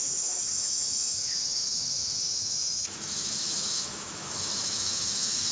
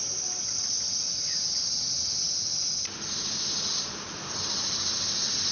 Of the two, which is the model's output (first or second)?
first